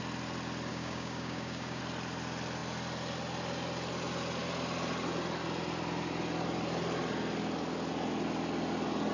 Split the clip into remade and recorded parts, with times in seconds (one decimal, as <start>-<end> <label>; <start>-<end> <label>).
0.0-0.7 recorded; 0.7-1.8 remade; 1.8-9.1 recorded